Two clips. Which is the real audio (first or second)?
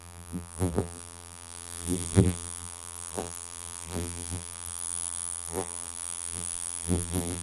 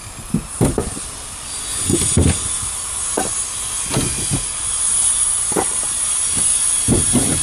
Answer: second